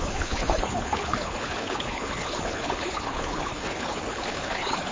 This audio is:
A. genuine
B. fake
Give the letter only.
B